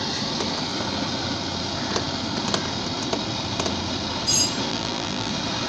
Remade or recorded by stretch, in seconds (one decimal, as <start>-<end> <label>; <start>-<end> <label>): 0.0-4.7 recorded; 4.7-5.3 remade; 5.3-5.7 recorded